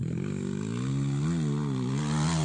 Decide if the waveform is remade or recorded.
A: recorded